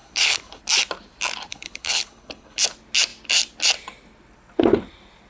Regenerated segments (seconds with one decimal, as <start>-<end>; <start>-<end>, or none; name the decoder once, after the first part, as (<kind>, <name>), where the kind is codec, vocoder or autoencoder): 0.0-0.6 (codec, HILCodec); 1.5-2.6